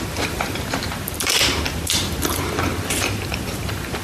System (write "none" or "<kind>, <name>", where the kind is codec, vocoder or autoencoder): vocoder, BigVGAN v2